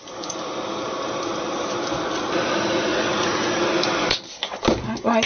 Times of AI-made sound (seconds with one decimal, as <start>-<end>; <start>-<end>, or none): 2.9-3.5